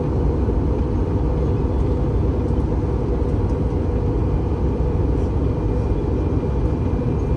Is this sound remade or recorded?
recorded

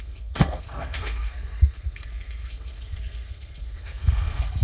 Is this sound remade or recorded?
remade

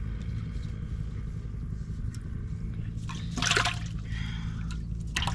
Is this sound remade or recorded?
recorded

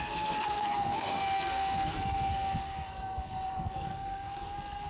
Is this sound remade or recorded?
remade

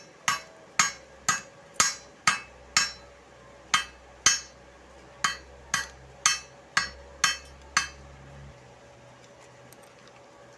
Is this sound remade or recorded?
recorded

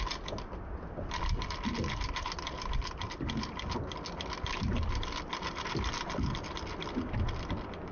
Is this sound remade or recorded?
recorded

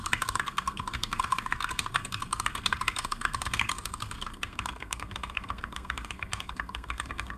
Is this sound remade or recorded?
remade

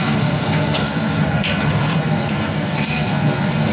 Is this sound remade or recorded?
remade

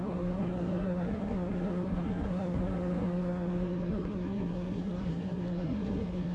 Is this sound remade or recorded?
remade